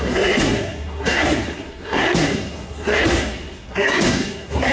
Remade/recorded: remade